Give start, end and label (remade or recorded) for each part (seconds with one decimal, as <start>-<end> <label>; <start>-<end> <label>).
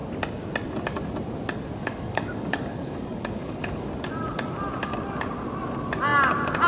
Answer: 0.0-1.8 recorded; 1.8-3.9 remade; 3.9-6.7 recorded